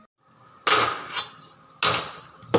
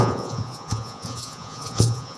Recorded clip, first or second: first